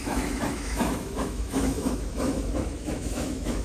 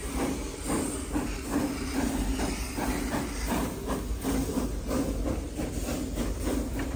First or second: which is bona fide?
second